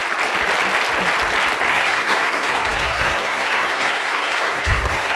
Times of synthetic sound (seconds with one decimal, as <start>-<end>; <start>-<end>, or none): 1.7-5.2